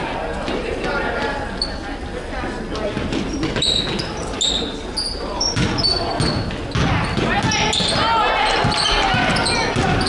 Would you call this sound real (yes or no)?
yes